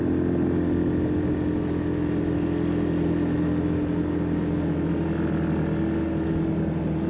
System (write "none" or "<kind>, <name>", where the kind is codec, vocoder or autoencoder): none